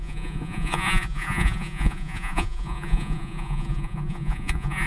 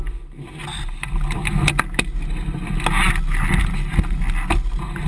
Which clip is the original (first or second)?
second